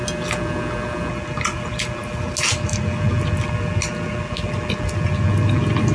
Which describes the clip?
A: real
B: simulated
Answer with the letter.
A